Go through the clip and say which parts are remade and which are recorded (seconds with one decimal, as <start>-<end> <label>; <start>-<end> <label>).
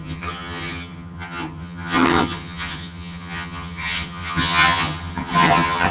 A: 0.0-5.9 remade